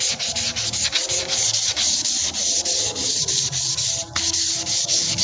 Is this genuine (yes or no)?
yes